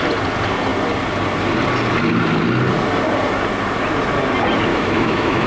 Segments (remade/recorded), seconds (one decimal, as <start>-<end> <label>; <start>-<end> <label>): 0.0-4.7 recorded; 4.7-5.5 remade